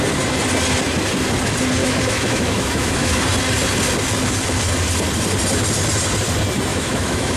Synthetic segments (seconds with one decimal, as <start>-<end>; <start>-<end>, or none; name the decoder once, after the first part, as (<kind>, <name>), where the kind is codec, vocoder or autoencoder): 1.8-3.1 (autoencoder, DAC-VAE); 6.7-7.4